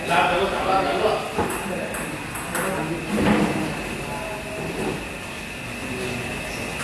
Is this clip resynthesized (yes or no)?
no